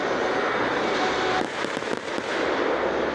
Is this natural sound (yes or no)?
yes